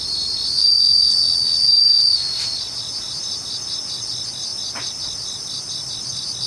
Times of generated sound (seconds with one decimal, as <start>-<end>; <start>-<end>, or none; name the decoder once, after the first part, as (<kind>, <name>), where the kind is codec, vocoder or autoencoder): 4.5-5.9 (vocoder, BigVGAN v2)